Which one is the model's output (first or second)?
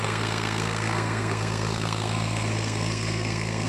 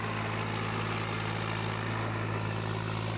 first